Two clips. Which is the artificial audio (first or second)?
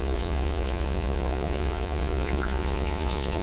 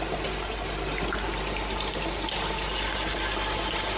first